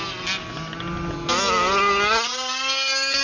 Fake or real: real